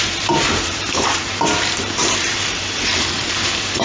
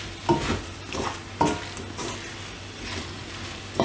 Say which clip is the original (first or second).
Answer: second